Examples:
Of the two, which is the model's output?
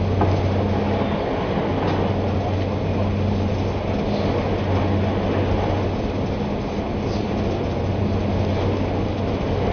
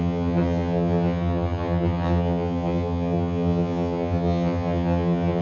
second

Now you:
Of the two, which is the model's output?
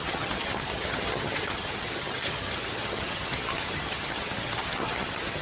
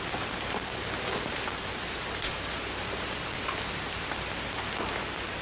first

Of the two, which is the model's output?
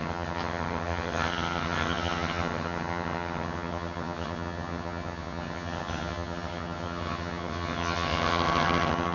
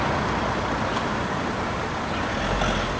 first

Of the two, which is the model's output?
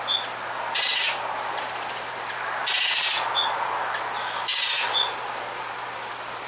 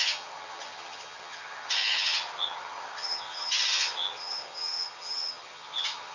second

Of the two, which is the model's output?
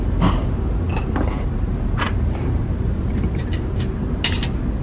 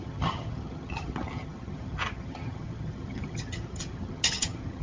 second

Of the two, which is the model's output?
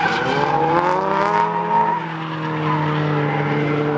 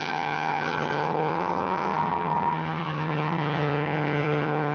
second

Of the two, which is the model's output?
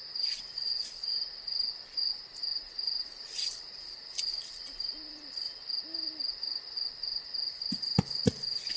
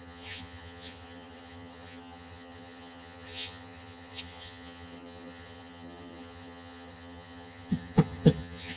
second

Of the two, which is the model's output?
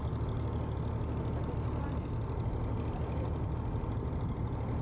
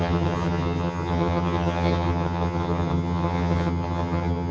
second